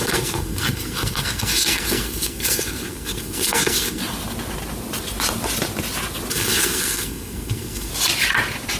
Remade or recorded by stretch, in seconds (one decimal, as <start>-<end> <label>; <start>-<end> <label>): 0.0-4.0 remade; 4.0-6.3 recorded; 6.3-7.9 remade; 7.9-8.8 recorded